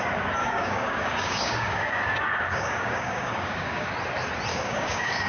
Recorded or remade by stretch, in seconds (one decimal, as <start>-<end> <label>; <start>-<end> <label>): 0.0-0.4 recorded; 0.4-2.1 remade; 2.1-2.5 recorded; 2.5-3.9 remade; 3.9-4.5 recorded; 4.5-5.3 remade